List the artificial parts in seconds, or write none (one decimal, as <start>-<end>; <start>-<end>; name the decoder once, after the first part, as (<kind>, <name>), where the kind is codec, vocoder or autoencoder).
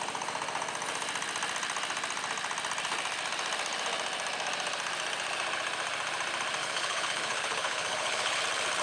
6.6-8.4 (codec, HILCodec)